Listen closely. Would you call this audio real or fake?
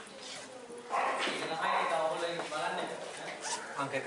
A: real